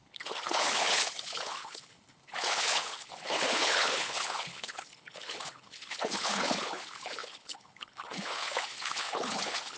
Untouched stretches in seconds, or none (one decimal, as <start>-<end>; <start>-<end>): none